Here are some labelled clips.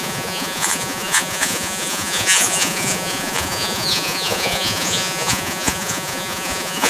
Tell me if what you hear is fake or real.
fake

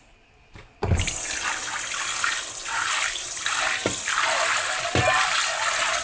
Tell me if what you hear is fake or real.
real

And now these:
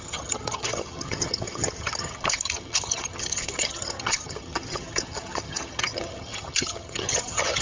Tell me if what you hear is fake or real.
fake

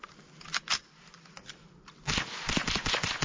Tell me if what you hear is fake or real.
real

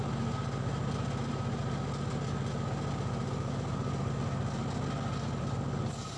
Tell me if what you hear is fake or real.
real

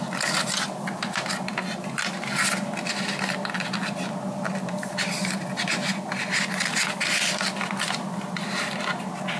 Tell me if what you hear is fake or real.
real